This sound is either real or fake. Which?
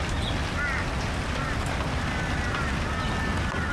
real